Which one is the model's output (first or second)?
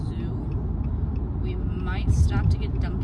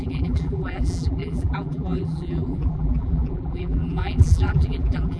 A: second